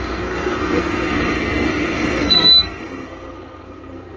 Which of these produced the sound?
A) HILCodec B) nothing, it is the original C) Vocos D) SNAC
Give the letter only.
D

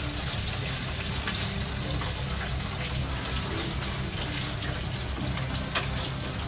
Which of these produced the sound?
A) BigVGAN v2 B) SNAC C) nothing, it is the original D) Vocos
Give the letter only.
C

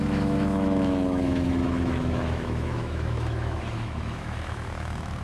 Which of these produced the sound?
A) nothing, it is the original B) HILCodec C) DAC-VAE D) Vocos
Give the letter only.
C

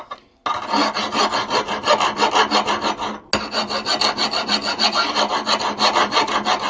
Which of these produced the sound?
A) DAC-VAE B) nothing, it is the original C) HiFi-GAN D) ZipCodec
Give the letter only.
B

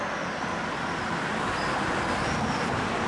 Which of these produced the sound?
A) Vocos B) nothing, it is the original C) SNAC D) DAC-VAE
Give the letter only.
B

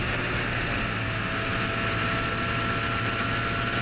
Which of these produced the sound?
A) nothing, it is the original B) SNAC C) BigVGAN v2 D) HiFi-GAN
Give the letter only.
A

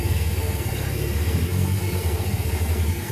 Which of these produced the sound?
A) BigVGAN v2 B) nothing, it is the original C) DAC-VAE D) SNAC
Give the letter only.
D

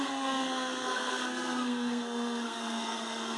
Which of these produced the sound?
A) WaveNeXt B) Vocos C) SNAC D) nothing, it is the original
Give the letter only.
C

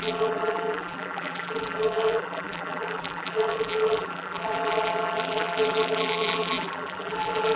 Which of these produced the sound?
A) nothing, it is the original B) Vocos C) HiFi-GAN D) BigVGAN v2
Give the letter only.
D